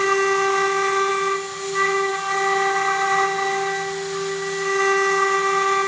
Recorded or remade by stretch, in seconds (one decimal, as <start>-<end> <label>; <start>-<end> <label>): 0.0-5.9 recorded